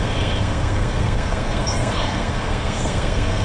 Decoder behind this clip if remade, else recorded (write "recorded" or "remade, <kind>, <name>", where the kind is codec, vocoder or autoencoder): remade, codec, SNAC